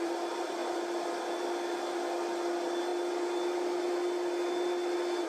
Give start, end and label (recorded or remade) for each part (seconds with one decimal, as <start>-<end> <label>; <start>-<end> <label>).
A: 0.0-5.3 recorded